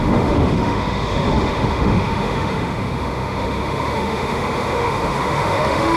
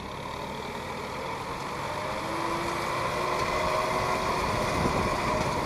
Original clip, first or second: second